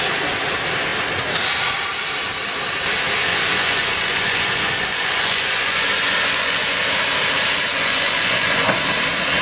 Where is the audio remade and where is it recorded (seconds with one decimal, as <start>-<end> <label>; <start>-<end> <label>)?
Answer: 0.0-3.3 recorded; 3.3-6.8 remade; 6.8-7.7 recorded; 7.7-8.7 remade; 8.7-9.4 recorded